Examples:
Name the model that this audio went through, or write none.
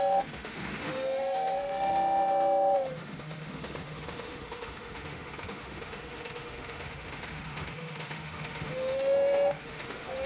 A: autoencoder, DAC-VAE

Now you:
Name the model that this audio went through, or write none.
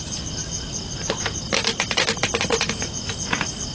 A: none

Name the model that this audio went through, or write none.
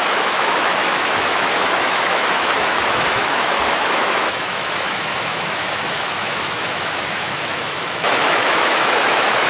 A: autoencoder, DAC-VAE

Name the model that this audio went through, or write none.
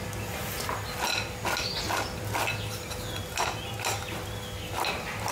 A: none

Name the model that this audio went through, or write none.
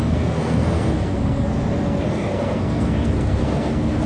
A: codec, SNAC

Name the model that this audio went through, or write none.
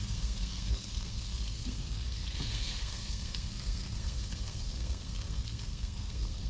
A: codec, SNAC